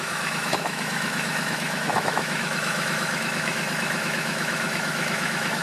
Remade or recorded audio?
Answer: remade